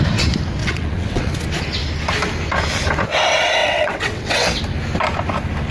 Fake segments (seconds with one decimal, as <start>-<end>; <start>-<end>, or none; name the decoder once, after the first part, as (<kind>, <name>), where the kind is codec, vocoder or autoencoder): 0.6-1.3 (vocoder, WaveNeXt); 3.6-4.6